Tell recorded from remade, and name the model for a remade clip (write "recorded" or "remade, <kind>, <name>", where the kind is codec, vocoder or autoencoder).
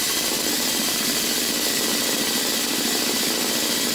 remade, vocoder, BigVGAN v2